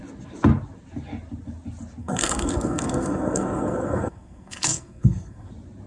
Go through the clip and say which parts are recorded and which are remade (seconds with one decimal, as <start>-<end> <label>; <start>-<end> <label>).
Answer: 0.0-2.0 recorded; 2.0-5.5 remade; 5.5-5.9 recorded